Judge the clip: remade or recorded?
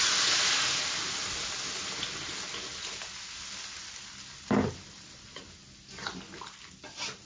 recorded